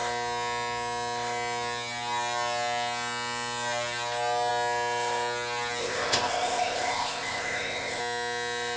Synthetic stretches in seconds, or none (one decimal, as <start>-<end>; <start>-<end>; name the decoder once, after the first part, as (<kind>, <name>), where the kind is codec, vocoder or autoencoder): 5.8-8.0 (codec, ZipCodec)